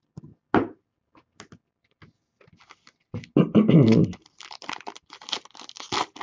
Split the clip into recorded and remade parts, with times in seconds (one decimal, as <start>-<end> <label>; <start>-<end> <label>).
0.0-6.2 recorded